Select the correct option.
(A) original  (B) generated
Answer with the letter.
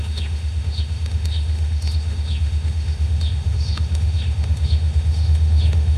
B